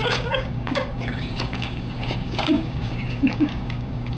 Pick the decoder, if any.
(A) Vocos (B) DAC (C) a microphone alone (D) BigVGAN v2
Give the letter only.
B